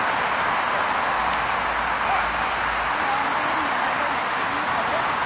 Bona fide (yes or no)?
yes